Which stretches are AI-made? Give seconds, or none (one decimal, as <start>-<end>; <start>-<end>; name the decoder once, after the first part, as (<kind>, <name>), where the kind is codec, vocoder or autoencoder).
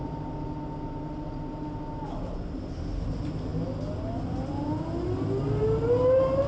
none